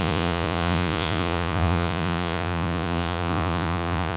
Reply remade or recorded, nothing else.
remade